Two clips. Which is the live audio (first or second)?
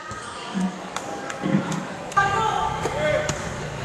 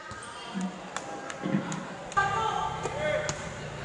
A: second